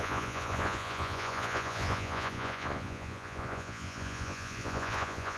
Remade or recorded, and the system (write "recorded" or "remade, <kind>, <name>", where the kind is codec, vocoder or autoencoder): remade, vocoder, Vocos